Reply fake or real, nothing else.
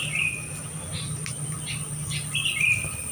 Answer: real